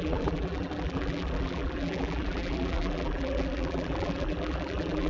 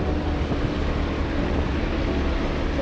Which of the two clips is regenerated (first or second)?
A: first